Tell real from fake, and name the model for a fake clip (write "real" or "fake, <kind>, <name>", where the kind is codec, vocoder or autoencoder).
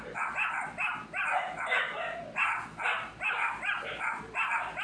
real